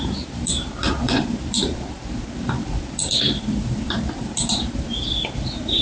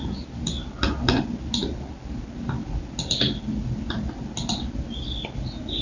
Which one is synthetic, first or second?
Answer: first